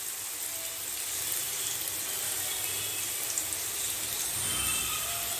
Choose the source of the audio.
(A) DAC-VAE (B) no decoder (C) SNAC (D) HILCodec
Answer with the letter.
B